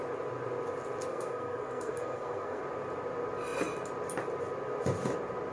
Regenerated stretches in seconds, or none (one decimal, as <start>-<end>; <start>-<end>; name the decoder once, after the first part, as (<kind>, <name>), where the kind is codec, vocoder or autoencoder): 1.1-2.6 (codec, SNAC)